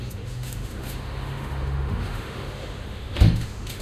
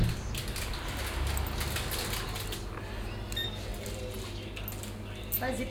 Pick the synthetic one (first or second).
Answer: first